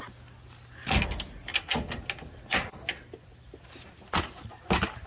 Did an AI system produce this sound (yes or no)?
no